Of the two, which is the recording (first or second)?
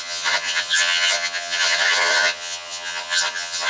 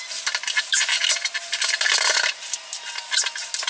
second